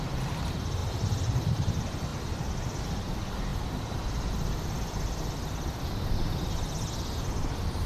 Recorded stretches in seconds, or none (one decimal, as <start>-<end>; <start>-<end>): 0.0-0.8; 1.5-3.5; 6.1-7.9